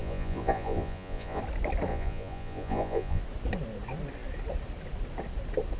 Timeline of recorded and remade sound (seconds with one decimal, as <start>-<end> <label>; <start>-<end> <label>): 0.0-1.4 remade; 1.4-1.9 recorded; 1.9-3.2 remade; 3.2-5.8 recorded